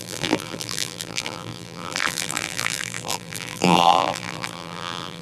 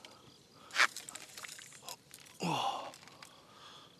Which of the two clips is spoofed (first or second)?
first